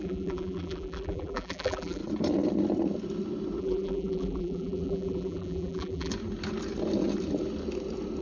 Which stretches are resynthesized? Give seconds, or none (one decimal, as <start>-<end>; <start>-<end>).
0.0-2.0; 3.6-6.1